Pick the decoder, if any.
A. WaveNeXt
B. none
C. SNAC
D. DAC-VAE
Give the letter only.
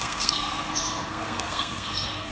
C